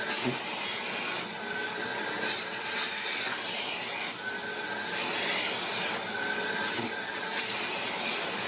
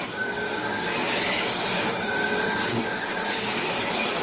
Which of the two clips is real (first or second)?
first